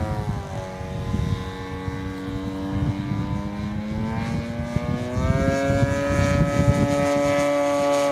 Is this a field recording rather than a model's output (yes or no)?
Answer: yes